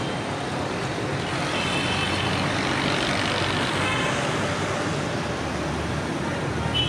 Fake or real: real